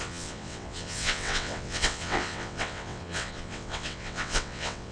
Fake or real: fake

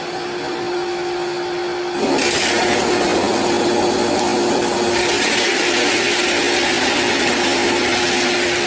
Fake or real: real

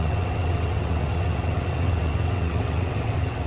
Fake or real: fake